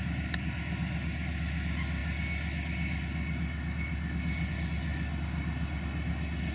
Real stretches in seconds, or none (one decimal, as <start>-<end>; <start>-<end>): 0.0-6.5